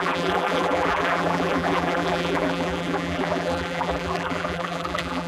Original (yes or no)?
no